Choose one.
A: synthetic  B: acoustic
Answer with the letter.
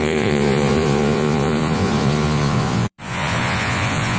A